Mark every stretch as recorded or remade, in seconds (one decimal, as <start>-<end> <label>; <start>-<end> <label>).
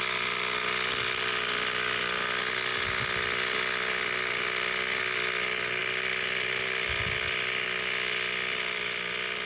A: 0.0-5.8 recorded; 5.8-7.0 remade; 7.0-9.5 recorded